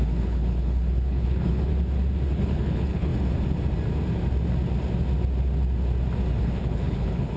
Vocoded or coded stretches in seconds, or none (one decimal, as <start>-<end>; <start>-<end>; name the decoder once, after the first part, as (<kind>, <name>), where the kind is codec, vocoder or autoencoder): 0.0-1.7 (codec, HILCodec); 2.3-3.1; 6.4-7.4